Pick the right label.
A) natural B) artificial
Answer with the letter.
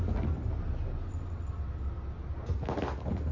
A